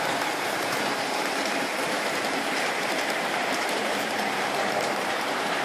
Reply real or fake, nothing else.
fake